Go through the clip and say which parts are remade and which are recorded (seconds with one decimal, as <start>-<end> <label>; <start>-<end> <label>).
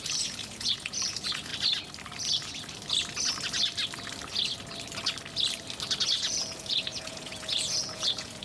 0.0-1.5 remade; 1.5-6.2 recorded; 6.2-8.4 remade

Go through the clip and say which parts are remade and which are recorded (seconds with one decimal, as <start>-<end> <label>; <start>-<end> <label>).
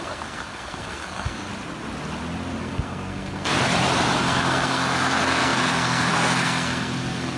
0.0-1.5 remade; 1.5-2.6 recorded; 2.6-3.5 remade; 3.5-4.2 recorded; 4.2-7.4 remade